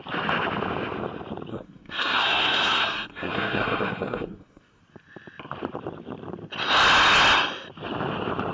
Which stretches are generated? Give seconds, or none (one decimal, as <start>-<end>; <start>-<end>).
1.5-4.8